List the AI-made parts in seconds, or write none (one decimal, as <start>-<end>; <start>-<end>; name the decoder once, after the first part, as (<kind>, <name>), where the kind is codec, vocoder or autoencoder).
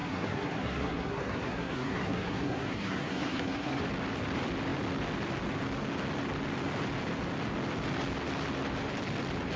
0.0-3.8 (codec, SNAC)